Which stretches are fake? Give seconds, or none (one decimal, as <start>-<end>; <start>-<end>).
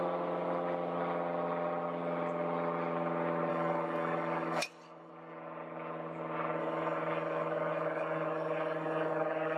3.5-5.1; 6.6-9.6